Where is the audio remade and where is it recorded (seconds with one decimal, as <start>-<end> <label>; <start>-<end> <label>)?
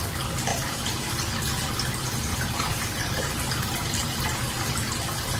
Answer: 0.0-0.5 recorded; 0.5-1.1 remade; 1.1-2.3 recorded; 2.3-5.0 remade; 5.0-5.4 recorded